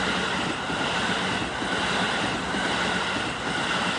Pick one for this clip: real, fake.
real